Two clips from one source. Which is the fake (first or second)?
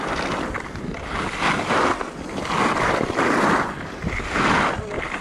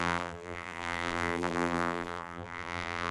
second